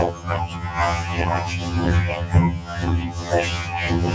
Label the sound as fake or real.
fake